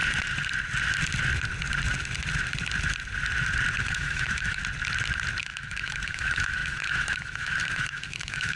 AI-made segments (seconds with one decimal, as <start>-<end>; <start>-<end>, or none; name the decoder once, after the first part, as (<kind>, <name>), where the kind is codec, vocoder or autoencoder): 3.8-4.6 (autoencoder, DAC-VAE); 5.4-8.6